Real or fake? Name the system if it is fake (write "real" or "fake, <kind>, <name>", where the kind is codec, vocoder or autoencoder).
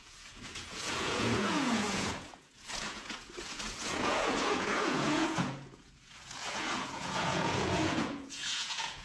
fake, vocoder, Vocos